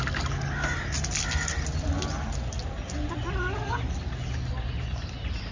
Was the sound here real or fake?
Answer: real